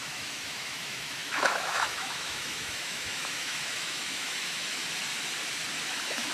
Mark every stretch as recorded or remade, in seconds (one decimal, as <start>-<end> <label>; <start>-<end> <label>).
0.0-4.8 remade; 4.8-5.8 recorded; 5.8-6.3 remade